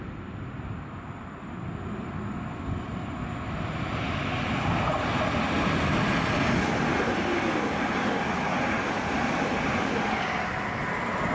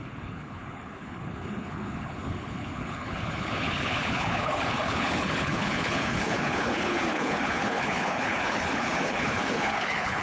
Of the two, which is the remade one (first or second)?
second